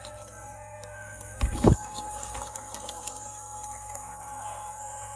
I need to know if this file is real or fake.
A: fake